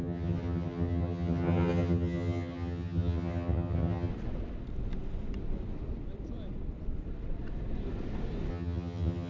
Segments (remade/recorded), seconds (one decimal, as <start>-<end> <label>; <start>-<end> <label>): 0.0-4.1 remade; 4.1-8.5 recorded; 8.5-9.3 remade